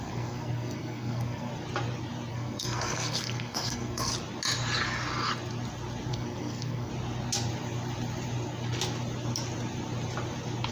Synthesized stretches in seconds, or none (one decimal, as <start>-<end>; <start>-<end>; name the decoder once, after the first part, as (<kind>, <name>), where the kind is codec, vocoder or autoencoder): 0.0-1.5 (codec, SNAC); 2.3-4.1; 6.1-6.9